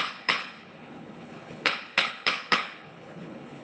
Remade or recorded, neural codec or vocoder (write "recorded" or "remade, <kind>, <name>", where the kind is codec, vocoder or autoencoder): remade, codec, HILCodec